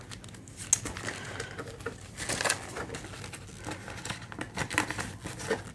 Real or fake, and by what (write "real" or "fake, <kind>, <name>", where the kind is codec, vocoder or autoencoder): real